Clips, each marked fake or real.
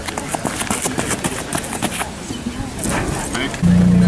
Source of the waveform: real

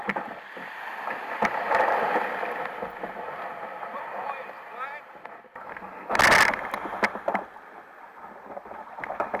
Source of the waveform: real